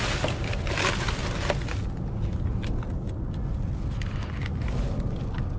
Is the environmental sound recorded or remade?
recorded